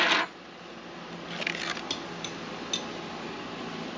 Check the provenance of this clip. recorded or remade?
recorded